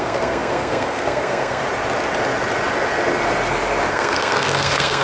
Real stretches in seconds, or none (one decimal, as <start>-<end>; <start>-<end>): 1.6-3.9